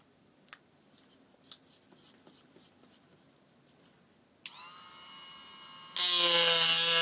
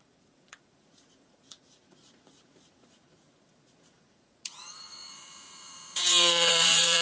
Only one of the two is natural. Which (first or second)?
first